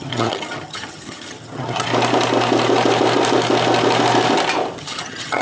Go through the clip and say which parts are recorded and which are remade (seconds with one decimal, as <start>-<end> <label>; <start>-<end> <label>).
0.0-1.9 remade; 1.9-4.8 recorded; 4.8-5.4 remade